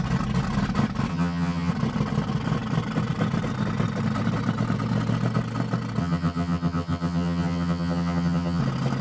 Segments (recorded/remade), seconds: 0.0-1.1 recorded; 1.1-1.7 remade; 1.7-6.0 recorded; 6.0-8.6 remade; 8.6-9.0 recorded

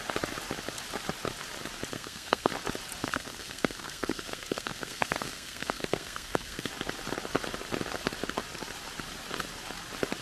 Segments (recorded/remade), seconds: 0.0-1.9 recorded; 1.9-2.5 remade; 2.5-3.0 recorded; 3.0-6.7 remade; 6.7-10.2 recorded

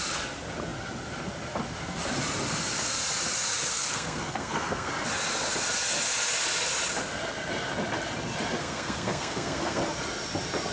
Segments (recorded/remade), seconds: 0.0-3.7 recorded; 3.7-4.9 remade; 4.9-8.6 recorded; 8.6-9.8 remade; 9.8-10.7 recorded

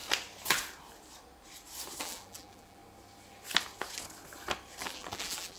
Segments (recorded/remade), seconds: 0.0-2.0 recorded; 2.0-2.8 remade; 2.8-4.8 recorded; 4.8-5.6 remade

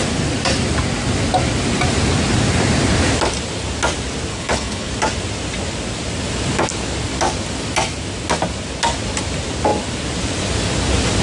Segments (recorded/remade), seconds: 0.0-4.3 recorded; 4.3-4.9 remade; 4.9-11.2 recorded

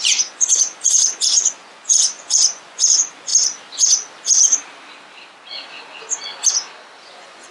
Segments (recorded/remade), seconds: 0.0-3.3 remade; 3.3-7.0 recorded; 7.0-7.5 remade

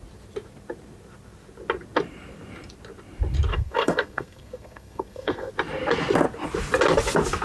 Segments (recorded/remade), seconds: 0.0-3.5 recorded; 3.5-5.5 remade; 5.5-7.4 recorded

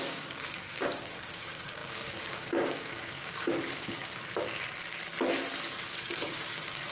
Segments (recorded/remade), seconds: 0.0-4.0 remade; 4.0-6.1 recorded; 6.1-6.9 remade